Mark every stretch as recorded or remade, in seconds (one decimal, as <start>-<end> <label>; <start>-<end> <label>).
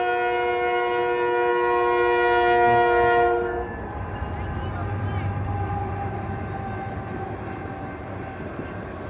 0.0-9.1 recorded